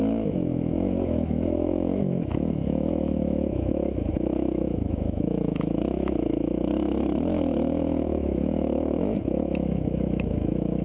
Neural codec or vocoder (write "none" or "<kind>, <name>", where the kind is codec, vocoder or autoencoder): autoencoder, DAC-VAE